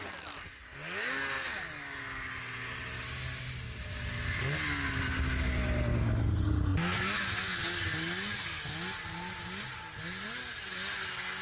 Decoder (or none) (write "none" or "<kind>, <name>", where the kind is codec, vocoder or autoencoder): none